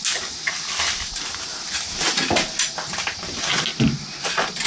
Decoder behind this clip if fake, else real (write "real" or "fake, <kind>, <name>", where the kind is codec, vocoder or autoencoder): real